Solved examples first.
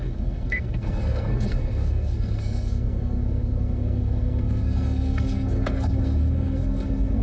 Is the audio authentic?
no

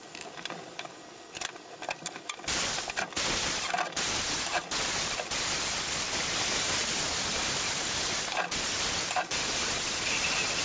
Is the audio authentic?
yes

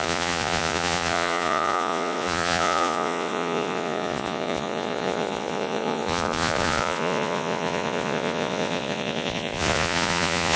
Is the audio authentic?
no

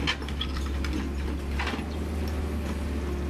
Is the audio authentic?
yes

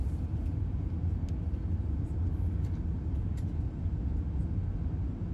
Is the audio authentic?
yes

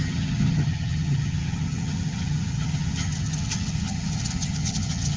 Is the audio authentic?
no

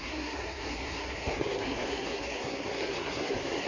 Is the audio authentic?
no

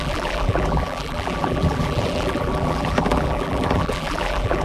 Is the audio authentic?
no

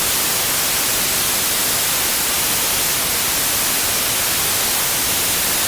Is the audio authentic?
yes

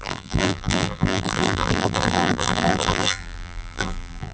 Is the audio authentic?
no